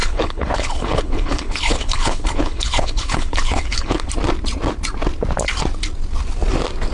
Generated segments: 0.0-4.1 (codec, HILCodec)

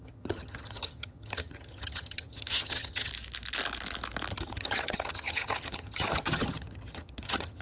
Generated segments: 0.0-3.1 (vocoder, HiFi-GAN); 4.3-7.6

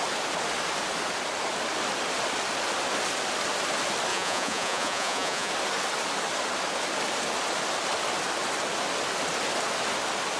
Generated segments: 4.1-5.5 (vocoder, Vocos)

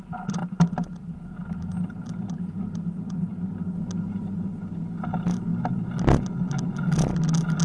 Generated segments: none

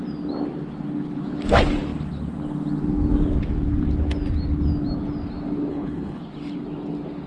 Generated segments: 5.7-6.2 (codec, HILCodec)

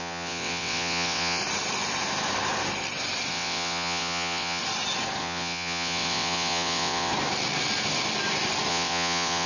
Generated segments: 0.0-1.4 (vocoder, WaveNeXt); 3.3-4.6; 5.2-7.1; 8.7-9.5